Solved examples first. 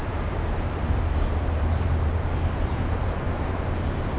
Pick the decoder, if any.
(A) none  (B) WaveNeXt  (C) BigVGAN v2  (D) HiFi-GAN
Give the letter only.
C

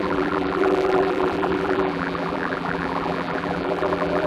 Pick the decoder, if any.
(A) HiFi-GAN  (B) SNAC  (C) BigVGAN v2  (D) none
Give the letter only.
C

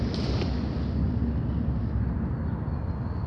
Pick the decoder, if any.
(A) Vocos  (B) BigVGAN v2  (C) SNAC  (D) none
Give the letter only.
B